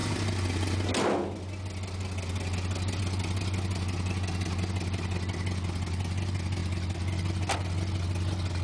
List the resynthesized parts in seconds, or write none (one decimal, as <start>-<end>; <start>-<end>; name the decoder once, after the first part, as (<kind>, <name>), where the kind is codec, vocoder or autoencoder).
none